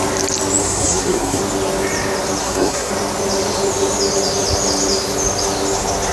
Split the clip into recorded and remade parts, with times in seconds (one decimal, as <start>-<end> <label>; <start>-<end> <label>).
0.0-0.6 recorded; 0.6-1.4 remade; 1.4-2.4 recorded; 2.4-2.9 remade; 2.9-6.1 recorded